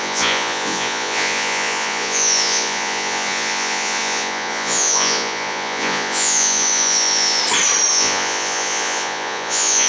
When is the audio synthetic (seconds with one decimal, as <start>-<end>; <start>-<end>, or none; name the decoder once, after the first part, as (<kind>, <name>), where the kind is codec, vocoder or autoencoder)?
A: 0.0-7.4 (vocoder, Vocos); 7.9-9.9